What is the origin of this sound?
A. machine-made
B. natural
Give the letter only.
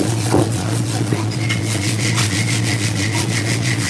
A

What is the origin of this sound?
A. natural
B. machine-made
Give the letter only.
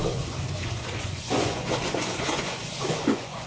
B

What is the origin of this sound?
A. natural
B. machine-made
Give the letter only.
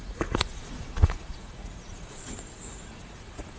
B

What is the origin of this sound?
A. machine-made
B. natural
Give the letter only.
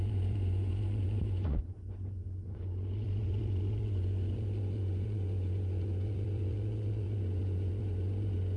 A